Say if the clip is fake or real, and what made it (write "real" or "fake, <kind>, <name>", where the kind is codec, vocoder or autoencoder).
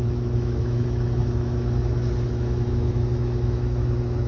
fake, autoencoder, DAC-VAE